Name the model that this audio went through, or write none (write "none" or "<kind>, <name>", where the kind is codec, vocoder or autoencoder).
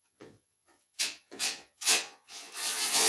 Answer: vocoder, Vocos